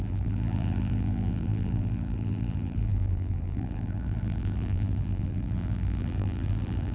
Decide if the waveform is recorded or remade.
remade